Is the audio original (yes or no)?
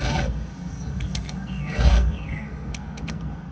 no